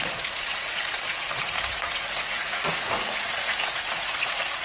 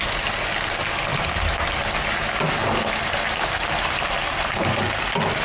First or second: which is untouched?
second